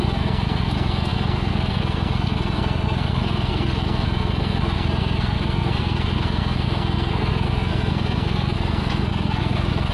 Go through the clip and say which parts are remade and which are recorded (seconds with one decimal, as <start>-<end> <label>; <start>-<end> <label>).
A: 0.0-9.9 remade